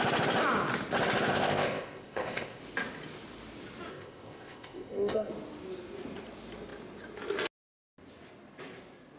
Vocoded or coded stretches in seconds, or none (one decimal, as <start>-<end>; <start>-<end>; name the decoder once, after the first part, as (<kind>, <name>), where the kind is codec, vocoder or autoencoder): 1.3-2.6 (codec, ZipCodec); 3.9-5.3